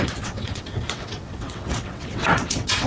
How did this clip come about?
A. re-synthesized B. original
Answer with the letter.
A